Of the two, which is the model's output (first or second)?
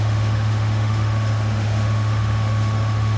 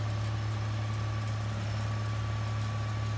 first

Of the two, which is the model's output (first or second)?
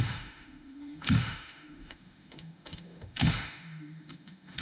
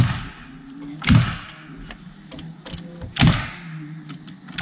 first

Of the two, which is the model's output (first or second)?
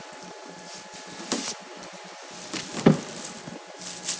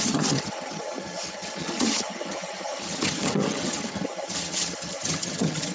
second